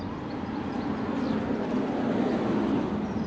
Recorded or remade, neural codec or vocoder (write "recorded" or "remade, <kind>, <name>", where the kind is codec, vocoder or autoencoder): recorded